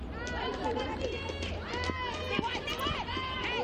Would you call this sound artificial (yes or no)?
no